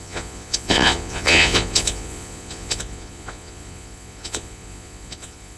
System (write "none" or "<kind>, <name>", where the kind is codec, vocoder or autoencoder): vocoder, Vocos